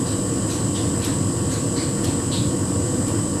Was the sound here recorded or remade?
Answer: recorded